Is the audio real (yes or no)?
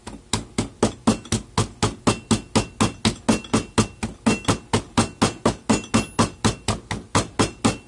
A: yes